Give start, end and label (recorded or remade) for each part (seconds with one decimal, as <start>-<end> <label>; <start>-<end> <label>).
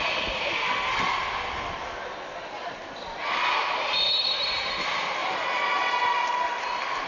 0.0-7.1 recorded